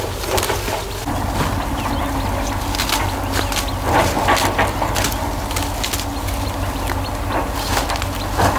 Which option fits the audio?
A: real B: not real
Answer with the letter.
A